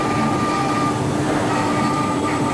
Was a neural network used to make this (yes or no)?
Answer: yes